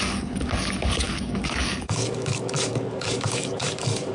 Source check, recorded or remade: remade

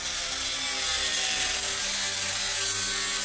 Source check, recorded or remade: recorded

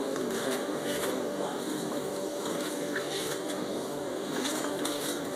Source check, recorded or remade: remade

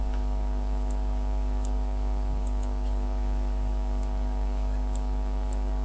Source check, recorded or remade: remade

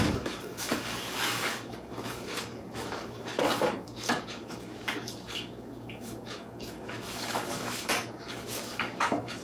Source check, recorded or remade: remade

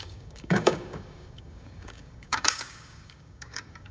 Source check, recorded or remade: remade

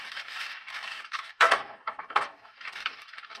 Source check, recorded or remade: remade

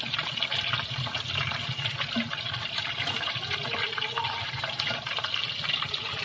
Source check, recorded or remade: recorded